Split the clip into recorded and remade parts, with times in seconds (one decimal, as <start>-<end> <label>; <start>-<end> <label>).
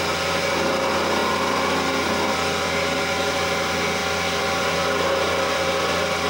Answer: 0.0-6.3 recorded